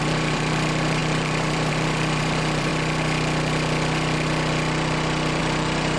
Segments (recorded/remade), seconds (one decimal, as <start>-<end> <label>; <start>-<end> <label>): 0.0-2.7 remade; 2.7-5.4 recorded; 5.4-6.0 remade

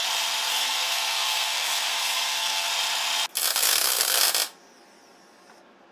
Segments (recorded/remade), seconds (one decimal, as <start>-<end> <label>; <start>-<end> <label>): 0.0-0.5 recorded; 0.5-2.7 remade; 2.7-3.5 recorded; 3.5-4.2 remade; 4.2-5.9 recorded

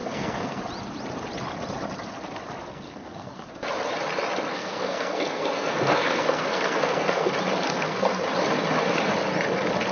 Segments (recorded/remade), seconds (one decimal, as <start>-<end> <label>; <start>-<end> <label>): 0.0-0.6 remade; 0.6-2.7 recorded; 2.7-3.5 remade; 3.5-4.5 recorded; 4.5-7.3 remade; 7.3-7.7 recorded; 7.7-8.2 remade; 8.2-9.9 recorded

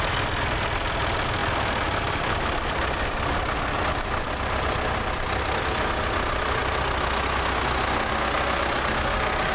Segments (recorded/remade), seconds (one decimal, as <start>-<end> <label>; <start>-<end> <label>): 0.0-9.5 recorded

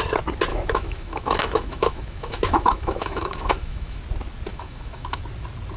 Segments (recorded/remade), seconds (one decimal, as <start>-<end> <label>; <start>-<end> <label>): 0.0-0.5 recorded; 0.5-4.0 remade; 4.0-4.5 recorded; 4.5-5.2 remade; 5.2-5.8 recorded